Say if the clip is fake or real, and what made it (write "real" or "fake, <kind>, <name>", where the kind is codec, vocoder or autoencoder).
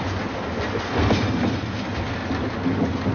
real